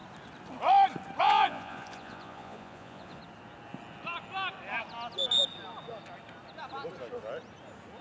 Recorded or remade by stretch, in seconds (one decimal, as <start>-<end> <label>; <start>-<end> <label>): 0.0-1.2 recorded; 1.2-3.2 remade; 3.2-8.0 recorded